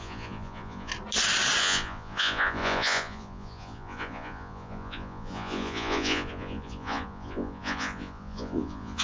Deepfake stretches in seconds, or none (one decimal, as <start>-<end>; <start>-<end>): 0.0-0.9; 1.6-9.0